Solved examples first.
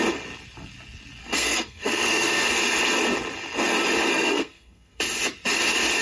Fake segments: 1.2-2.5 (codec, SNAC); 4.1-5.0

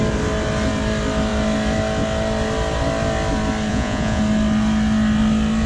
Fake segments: 3.7-4.2 (vocoder, Vocos)

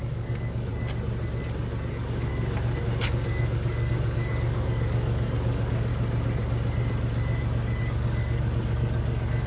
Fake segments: 0.0-0.7 (codec, DAC); 1.9-2.3; 2.8-5.9; 7.8-9.5

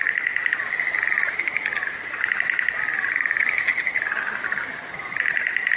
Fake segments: 3.7-4.6 (vocoder, BigVGAN v2)

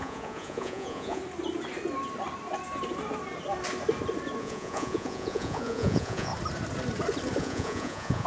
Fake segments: 0.0-1.2 (vocoder, Vocos); 4.4-6.3; 7.4-8.3

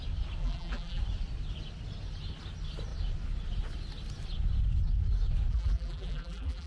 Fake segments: 0.4-1.0 (vocoder, BigVGAN v2); 5.5-6.7

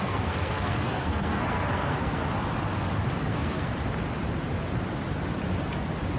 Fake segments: 0.0-2.2 (codec, SNAC); 3.2-3.7

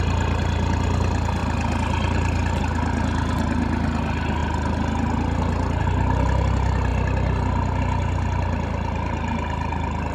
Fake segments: none